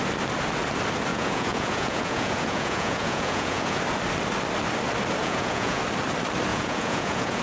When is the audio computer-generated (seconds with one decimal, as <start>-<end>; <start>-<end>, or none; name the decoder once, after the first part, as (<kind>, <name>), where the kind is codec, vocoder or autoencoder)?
1.1-3.8 (vocoder, Vocos); 5.2-5.8; 6.5-7.4